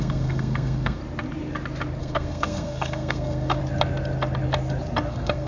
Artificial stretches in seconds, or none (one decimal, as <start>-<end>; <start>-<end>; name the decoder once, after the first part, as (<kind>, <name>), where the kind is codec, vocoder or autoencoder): 0.0-1.0 (codec, SNAC); 2.0-3.6; 5.1-5.5